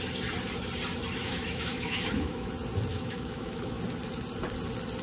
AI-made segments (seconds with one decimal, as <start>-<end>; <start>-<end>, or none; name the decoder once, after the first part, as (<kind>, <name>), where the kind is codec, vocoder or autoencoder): 1.2-2.5 (autoencoder, DAC-VAE); 2.9-3.8